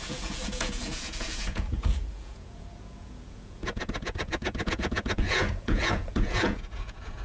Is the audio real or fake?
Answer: fake